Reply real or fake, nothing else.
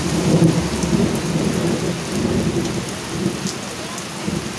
real